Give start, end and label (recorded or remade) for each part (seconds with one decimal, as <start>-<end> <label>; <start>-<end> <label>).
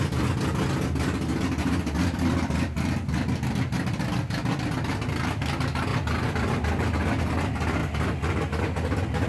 0.0-5.9 recorded; 5.9-7.2 remade; 7.2-9.3 recorded